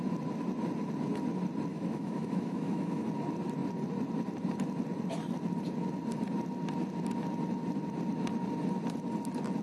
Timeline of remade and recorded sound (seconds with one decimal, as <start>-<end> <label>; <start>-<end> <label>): 0.0-1.7 recorded; 1.7-3.1 remade; 3.1-9.6 recorded